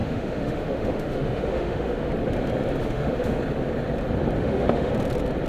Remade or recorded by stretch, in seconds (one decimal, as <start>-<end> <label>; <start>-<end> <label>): 0.0-2.1 remade; 2.1-2.8 recorded; 2.8-3.4 remade; 3.4-4.4 recorded; 4.4-4.9 remade; 4.9-5.5 recorded